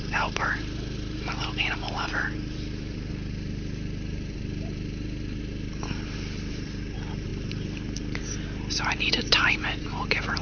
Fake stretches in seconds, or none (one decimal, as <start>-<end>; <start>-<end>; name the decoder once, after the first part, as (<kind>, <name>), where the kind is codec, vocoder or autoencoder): 0.0-10.4 (vocoder, BigVGAN v2)